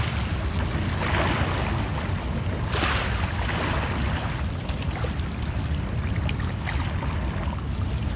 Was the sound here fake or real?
real